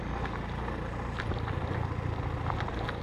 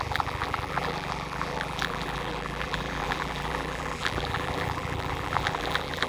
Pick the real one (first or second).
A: first